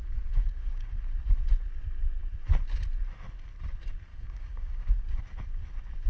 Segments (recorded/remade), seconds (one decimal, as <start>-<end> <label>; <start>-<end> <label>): 0.0-1.0 remade; 1.0-4.1 recorded; 4.1-5.2 remade; 5.2-6.1 recorded

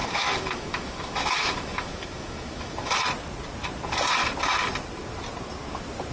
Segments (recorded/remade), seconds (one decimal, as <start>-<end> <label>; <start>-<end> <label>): 0.0-2.9 remade; 2.9-6.1 recorded